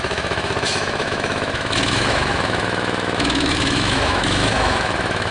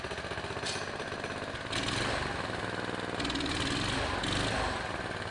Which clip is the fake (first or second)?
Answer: first